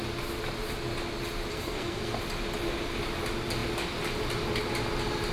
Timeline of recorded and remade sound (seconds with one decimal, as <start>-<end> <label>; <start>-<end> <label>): 0.0-1.5 recorded; 1.5-2.2 remade; 2.2-5.3 recorded